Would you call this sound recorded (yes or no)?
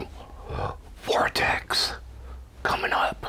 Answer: yes